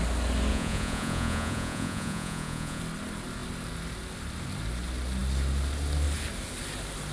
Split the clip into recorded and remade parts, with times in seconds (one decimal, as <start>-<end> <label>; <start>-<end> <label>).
0.0-0.5 recorded; 0.5-2.8 remade; 2.8-7.1 recorded